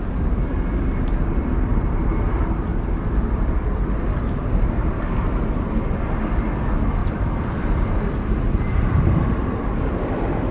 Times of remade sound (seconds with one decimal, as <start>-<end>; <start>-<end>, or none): 1.7-5.3; 7.0-9.8